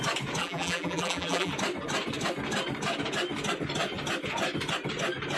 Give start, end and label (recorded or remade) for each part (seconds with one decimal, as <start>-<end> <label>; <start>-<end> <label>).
0.0-0.4 recorded; 0.4-1.5 remade; 1.5-5.4 recorded